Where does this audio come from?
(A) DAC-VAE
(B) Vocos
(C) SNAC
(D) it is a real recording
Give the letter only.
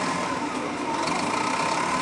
D